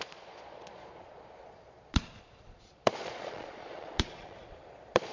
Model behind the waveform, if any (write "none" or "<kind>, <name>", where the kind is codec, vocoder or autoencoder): vocoder, Vocos